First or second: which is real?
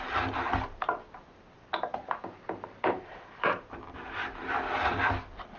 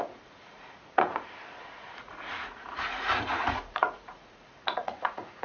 first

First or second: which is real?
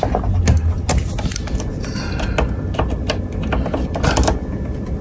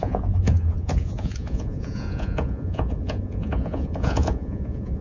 first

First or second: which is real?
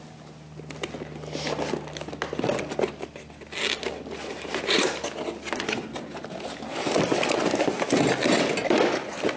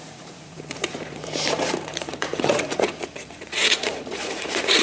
first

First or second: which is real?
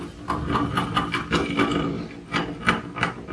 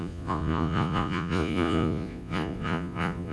first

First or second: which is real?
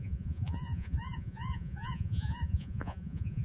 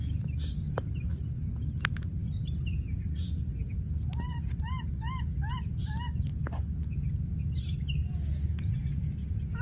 second